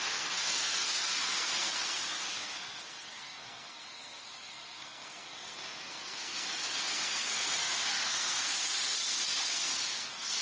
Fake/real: fake